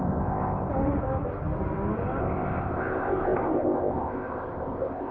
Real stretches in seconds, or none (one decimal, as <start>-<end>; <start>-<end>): 0.7-2.2